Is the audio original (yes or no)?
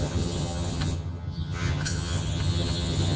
no